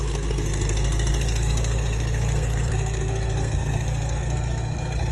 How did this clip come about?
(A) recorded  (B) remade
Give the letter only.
B